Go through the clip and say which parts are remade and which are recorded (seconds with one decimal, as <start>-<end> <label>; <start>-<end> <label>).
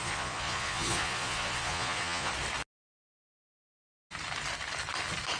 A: 0.0-2.3 remade; 2.3-5.4 recorded